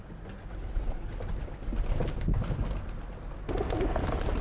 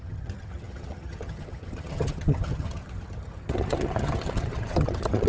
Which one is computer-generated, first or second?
second